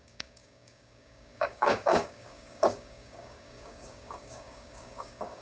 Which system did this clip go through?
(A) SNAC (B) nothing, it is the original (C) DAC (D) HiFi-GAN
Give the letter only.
C